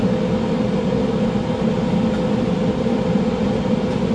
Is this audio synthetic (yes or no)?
no